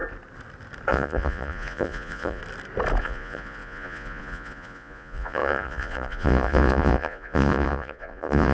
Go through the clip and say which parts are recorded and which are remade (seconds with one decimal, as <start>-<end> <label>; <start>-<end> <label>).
0.0-0.9 recorded; 0.9-2.4 remade; 2.4-3.0 recorded; 3.0-8.5 remade